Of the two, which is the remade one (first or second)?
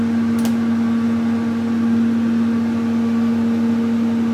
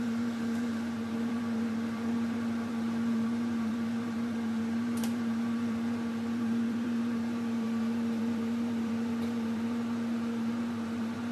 second